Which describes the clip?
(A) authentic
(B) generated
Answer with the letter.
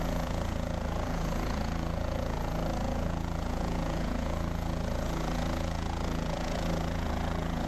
B